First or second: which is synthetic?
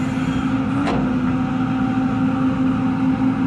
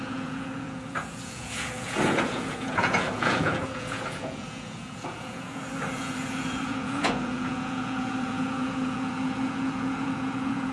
second